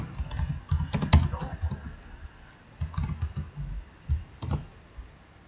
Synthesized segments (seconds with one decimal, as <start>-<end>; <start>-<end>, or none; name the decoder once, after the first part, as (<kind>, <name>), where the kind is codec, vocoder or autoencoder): none